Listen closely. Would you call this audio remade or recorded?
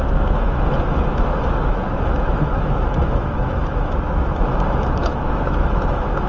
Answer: remade